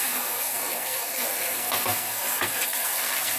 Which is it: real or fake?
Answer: fake